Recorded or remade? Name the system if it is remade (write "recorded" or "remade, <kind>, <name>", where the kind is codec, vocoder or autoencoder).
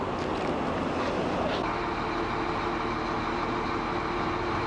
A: recorded